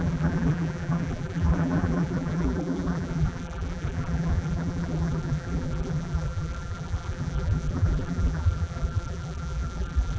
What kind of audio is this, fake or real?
fake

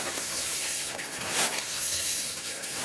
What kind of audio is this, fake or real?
fake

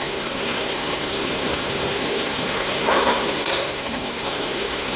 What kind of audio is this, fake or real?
fake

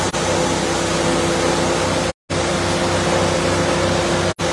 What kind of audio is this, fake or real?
real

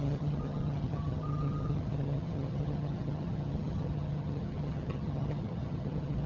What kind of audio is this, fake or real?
fake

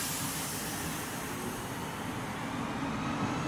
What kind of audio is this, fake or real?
real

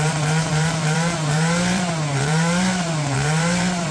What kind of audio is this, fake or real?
fake